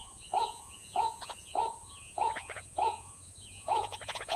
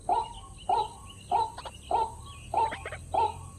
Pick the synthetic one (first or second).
first